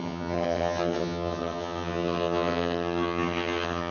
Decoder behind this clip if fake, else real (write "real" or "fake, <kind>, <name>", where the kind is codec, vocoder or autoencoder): fake, vocoder, HiFi-GAN